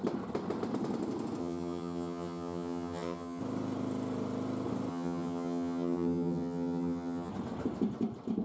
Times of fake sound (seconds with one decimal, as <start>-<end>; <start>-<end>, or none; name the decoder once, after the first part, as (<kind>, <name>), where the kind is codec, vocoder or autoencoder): 1.4-3.4 (vocoder, HiFi-GAN); 4.9-7.3